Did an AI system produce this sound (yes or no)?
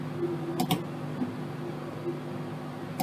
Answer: no